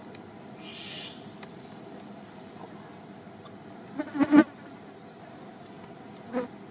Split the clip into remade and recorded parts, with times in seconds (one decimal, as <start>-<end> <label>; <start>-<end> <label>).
0.0-6.7 recorded